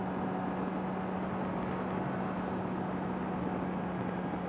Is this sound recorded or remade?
recorded